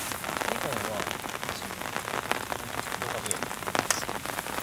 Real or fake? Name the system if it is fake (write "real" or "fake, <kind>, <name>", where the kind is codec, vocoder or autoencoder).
real